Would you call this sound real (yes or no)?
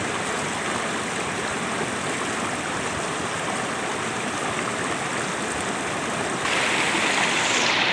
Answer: yes